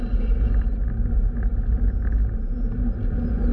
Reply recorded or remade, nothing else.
recorded